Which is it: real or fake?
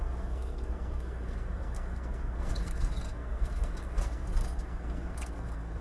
fake